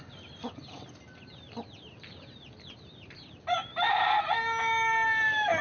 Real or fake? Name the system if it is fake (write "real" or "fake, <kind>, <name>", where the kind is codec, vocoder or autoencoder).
real